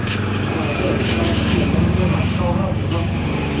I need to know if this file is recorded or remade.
remade